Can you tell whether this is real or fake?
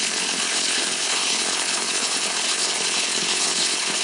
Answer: fake